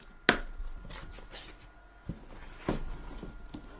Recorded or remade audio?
recorded